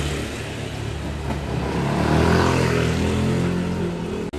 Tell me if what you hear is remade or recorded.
recorded